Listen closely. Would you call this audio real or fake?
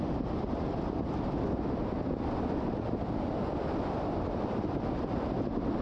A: fake